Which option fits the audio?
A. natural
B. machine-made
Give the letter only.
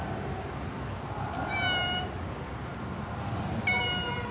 A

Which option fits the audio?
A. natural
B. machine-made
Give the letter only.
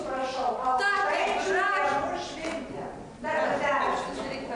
A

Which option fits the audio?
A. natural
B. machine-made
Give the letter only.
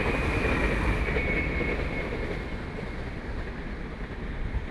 A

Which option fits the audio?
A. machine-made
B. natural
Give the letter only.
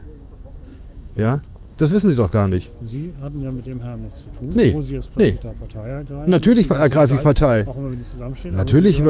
A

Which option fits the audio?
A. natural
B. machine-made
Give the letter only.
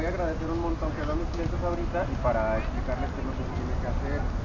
A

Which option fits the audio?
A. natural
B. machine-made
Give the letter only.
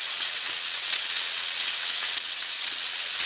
B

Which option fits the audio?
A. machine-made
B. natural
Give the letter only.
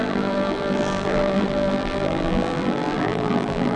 A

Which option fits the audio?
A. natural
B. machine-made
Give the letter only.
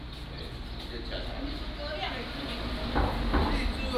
A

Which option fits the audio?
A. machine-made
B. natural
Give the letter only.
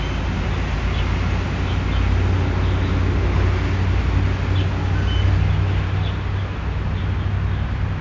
B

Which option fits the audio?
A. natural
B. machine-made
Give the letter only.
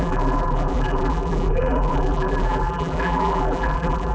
B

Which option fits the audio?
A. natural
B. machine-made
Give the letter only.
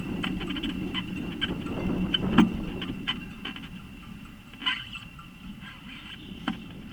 A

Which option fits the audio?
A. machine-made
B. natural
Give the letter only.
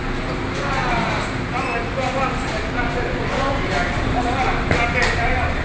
B